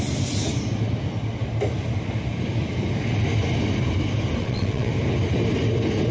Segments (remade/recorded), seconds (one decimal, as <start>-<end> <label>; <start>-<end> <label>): 0.0-4.4 recorded; 4.4-4.9 remade; 4.9-6.1 recorded